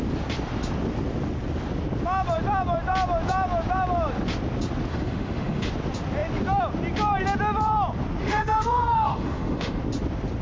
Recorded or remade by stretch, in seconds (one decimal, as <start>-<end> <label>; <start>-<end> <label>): 0.0-4.9 recorded; 4.9-5.7 remade; 5.7-8.2 recorded; 8.2-9.8 remade; 9.8-10.4 recorded